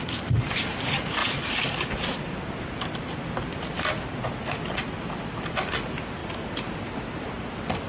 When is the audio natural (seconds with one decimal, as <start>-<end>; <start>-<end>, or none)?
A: 0.0-7.9